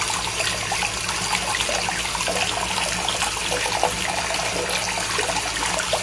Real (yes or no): yes